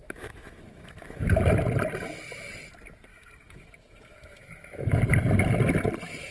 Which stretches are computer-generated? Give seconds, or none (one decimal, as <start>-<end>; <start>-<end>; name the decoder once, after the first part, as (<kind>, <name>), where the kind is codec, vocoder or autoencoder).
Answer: 0.0-1.4 (autoencoder, DAC-VAE); 3.1-5.0